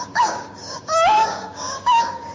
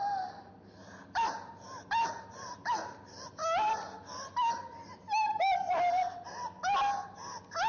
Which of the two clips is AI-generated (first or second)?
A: first